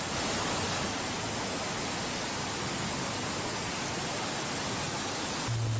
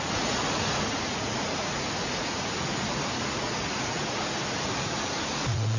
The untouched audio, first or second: first